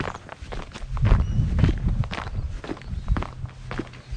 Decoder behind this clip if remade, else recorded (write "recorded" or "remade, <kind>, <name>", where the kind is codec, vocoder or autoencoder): recorded